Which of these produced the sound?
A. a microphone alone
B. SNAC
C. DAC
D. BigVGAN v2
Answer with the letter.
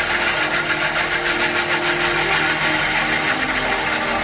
A